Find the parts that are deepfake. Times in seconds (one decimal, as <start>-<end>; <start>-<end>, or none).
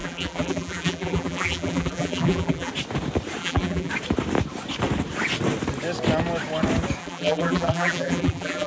0.0-2.7; 3.4-3.9; 7.0-8.7